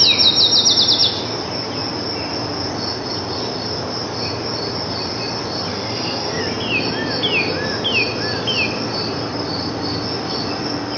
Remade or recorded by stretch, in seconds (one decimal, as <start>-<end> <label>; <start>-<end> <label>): 0.0-5.7 recorded; 5.7-6.4 remade; 6.4-11.0 recorded